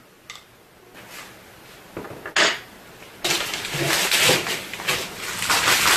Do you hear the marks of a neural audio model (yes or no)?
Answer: no